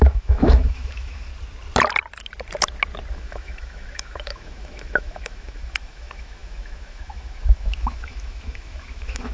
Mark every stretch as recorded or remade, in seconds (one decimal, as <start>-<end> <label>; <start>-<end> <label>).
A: 0.0-1.3 remade; 1.3-3.1 recorded; 3.1-9.3 remade

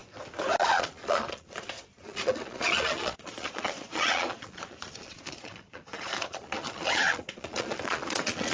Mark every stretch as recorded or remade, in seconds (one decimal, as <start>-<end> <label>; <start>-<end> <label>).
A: 0.0-0.6 recorded; 0.6-8.5 remade